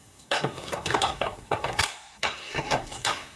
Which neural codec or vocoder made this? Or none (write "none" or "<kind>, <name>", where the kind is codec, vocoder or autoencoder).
codec, SNAC